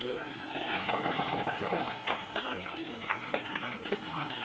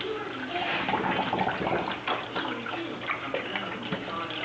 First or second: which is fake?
first